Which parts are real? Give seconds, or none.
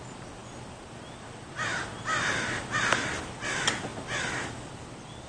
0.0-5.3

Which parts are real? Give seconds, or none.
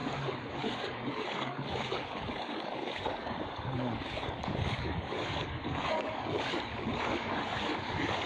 none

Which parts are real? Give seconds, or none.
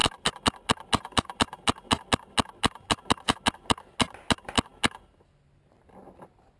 0.0-6.6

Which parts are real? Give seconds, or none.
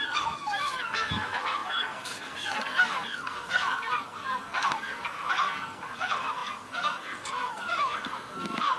none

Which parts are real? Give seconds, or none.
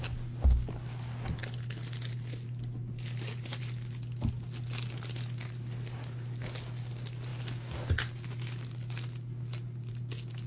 0.0-10.5